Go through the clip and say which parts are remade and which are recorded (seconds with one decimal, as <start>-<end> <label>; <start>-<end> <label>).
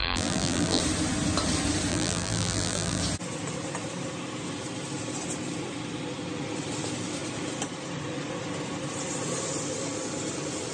0.0-0.8 remade; 0.8-1.9 recorded; 1.9-3.0 remade; 3.0-10.7 recorded